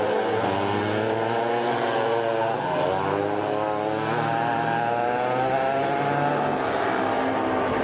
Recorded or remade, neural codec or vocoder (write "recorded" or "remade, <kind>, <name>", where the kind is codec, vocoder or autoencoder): recorded